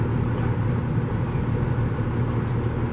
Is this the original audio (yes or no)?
yes